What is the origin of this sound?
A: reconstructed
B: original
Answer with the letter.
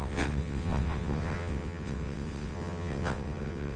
A